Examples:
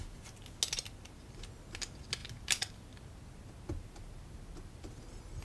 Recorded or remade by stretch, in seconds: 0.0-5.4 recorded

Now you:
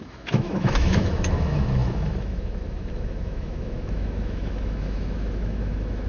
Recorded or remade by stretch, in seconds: 0.0-6.1 remade

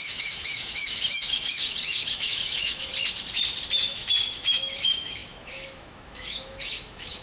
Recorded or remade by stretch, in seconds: 0.0-2.9 remade; 2.9-3.8 recorded; 3.8-7.2 remade

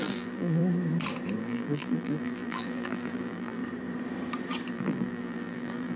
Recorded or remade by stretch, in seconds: 0.0-0.6 remade; 0.6-1.4 recorded; 1.4-3.6 remade; 3.6-4.7 recorded; 4.7-6.0 remade

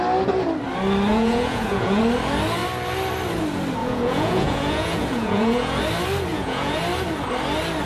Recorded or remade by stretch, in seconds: 0.0-1.1 recorded; 1.1-2.0 remade; 2.0-3.8 recorded; 3.8-5.8 remade; 5.8-6.3 recorded; 6.3-6.8 remade; 6.8-7.9 recorded

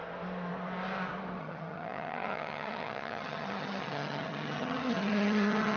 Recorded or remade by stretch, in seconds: 0.0-1.4 recorded; 1.4-5.8 remade

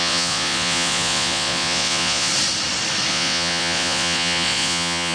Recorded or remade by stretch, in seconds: 0.0-2.3 remade; 2.3-3.1 recorded; 3.1-5.1 remade